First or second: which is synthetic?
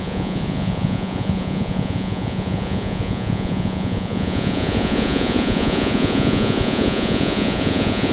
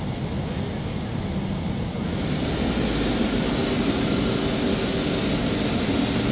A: first